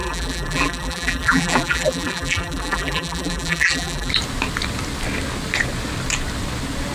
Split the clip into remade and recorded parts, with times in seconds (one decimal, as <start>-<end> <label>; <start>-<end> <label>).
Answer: 0.0-4.1 remade; 4.1-6.9 recorded